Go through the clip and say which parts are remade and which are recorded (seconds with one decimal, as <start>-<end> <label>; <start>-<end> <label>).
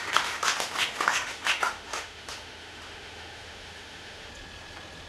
0.0-4.3 remade; 4.3-5.1 recorded